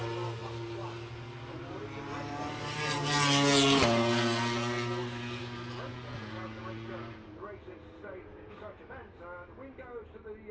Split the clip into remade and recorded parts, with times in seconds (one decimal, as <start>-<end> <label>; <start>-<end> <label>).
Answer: 0.0-5.9 recorded; 5.9-8.8 remade; 8.8-10.5 recorded